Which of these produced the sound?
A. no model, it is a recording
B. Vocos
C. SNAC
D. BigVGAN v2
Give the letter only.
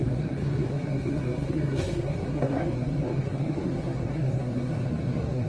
C